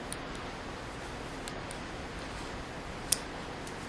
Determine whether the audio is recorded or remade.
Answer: recorded